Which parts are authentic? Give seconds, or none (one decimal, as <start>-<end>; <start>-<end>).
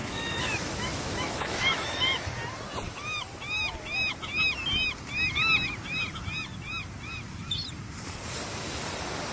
2.3-9.3